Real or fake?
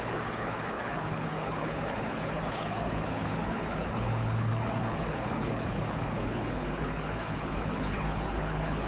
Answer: fake